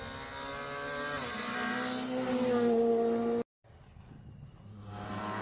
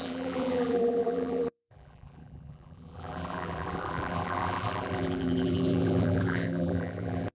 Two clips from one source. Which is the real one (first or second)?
first